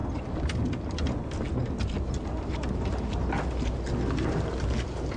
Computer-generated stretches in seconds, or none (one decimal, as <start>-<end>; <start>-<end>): none